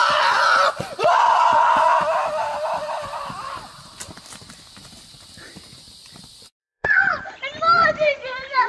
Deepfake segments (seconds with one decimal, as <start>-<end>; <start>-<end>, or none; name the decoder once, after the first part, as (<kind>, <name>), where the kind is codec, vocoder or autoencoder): 0.0-2.0 (vocoder, Vocos); 6.6-7.3